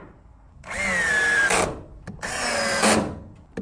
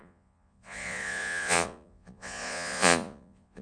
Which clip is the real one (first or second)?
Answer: first